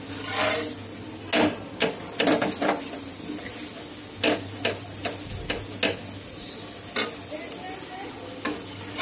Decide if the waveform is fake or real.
real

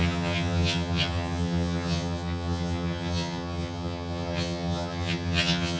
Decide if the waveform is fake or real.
fake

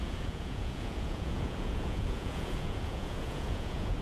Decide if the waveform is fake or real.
fake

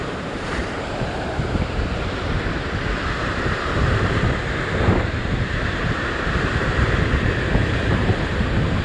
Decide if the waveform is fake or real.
fake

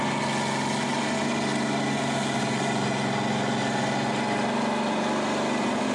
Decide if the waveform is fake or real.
real